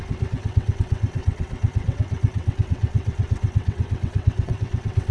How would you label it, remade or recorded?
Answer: remade